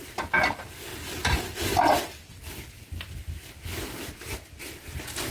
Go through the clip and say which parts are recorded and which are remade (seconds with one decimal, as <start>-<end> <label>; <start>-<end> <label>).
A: 0.0-5.3 recorded